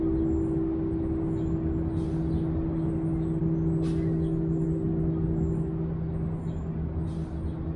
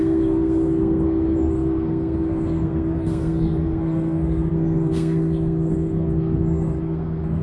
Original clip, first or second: first